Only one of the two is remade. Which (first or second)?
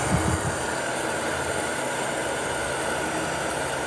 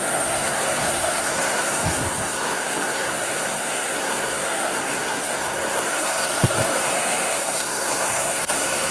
second